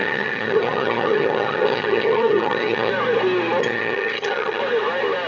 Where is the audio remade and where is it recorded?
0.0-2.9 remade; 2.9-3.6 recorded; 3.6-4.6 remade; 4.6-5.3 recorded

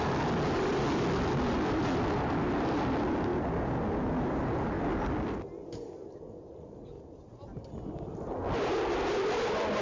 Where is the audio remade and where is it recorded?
0.0-9.8 recorded